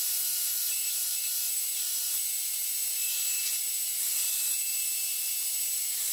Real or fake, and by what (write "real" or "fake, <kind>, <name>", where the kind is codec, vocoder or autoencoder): fake, vocoder, BigVGAN v2